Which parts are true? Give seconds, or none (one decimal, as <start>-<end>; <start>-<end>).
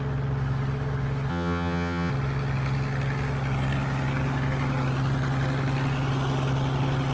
0.0-1.3; 2.1-7.1